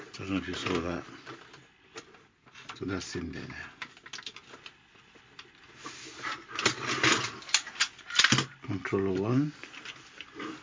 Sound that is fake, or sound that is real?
real